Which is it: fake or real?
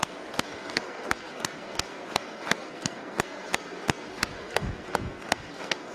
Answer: fake